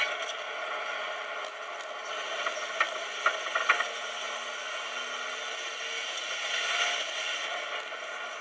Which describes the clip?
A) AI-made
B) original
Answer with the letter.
B